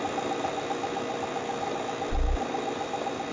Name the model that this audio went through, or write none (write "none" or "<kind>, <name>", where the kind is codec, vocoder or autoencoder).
none